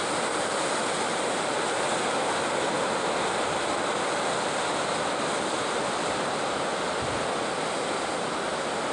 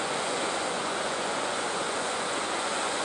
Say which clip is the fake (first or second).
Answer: second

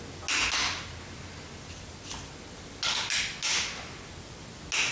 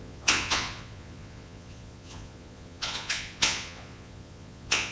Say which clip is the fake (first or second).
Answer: second